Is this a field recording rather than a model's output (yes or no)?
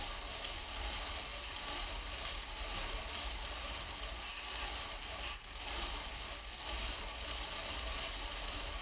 yes